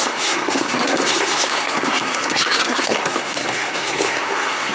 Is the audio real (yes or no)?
no